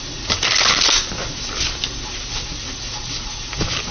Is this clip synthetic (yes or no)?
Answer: no